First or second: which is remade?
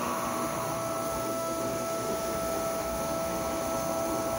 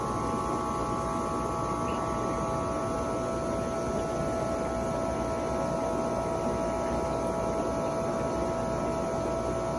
first